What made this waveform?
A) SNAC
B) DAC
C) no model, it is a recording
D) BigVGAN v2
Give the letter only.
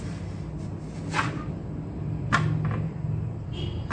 C